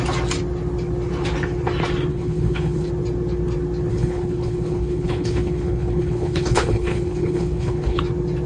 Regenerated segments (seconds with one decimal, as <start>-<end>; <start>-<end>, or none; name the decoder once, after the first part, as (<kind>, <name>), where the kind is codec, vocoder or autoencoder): 2.1-2.9 (codec, HILCodec); 3.9-8.0